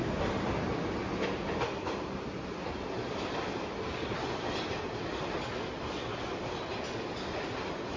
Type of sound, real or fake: real